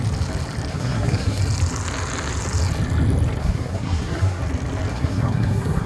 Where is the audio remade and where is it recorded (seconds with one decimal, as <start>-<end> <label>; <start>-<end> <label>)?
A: 0.0-0.7 recorded; 0.7-1.4 remade; 1.4-3.4 recorded; 3.4-4.4 remade; 4.4-4.9 recorded; 4.9-5.9 remade